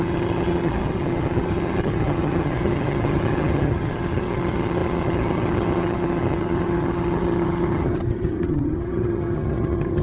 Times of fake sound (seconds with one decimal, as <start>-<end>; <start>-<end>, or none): 0.0-10.0